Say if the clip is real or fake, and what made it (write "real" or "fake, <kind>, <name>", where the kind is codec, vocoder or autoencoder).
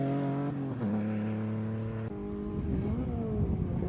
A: real